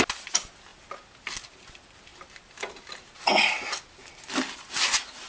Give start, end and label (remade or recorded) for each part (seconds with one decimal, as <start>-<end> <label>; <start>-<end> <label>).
0.0-5.3 recorded